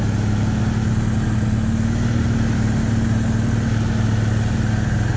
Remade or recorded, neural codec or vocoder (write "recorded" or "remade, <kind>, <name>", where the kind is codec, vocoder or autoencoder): recorded